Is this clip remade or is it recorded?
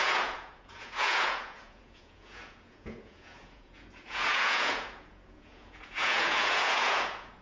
remade